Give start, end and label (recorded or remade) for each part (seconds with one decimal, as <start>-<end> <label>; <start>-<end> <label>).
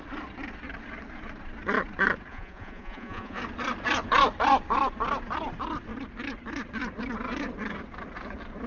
0.0-2.3 recorded; 2.3-3.4 remade; 3.4-8.7 recorded